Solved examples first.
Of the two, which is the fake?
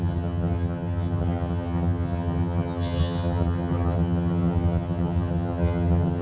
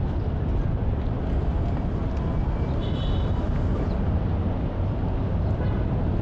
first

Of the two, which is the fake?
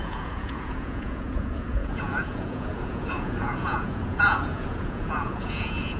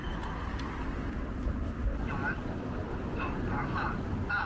first